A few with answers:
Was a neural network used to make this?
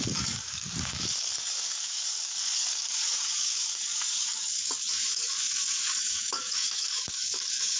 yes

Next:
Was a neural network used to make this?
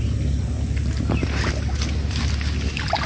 no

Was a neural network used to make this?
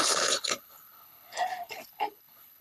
yes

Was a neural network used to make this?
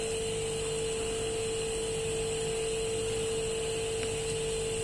no